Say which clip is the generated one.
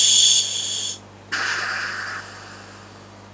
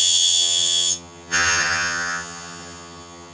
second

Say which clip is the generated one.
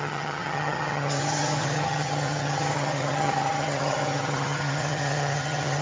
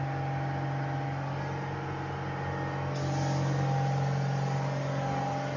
first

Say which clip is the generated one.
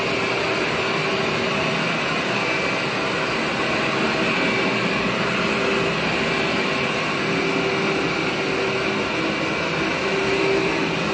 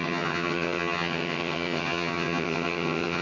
second